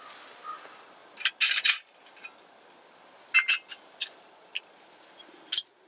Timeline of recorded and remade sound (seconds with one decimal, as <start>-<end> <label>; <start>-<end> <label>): 0.0-5.9 recorded